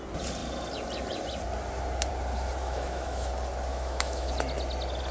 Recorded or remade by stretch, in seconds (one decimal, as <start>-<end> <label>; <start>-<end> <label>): 0.0-2.6 recorded; 2.6-3.3 remade; 3.3-3.7 recorded; 3.7-4.3 remade; 4.3-5.1 recorded